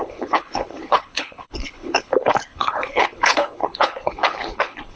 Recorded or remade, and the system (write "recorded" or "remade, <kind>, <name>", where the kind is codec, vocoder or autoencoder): remade, codec, HILCodec